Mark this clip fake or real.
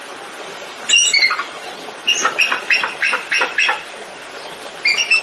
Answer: fake